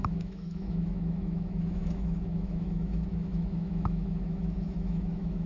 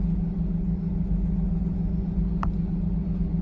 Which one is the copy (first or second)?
first